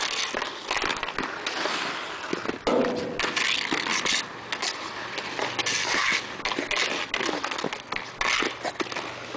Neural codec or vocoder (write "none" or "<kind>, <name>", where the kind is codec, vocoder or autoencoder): none